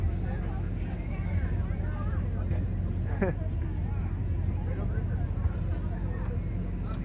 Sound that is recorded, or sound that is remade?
recorded